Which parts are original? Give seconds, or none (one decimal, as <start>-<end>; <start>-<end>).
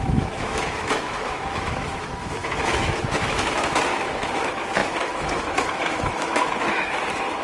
none